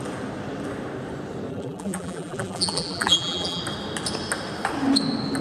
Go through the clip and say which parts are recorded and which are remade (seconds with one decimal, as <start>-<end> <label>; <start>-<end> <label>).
0.0-1.5 recorded; 1.5-3.6 remade; 3.6-5.4 recorded